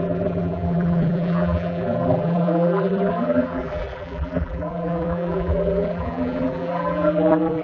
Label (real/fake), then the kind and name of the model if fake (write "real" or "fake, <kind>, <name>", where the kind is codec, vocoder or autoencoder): fake, vocoder, BigVGAN v2